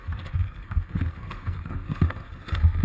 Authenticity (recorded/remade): remade